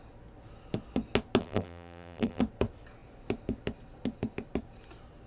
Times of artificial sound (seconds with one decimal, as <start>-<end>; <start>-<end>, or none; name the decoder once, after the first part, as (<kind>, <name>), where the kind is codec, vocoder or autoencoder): 1.4-2.4 (vocoder, BigVGAN v2)